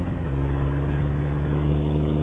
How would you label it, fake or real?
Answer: fake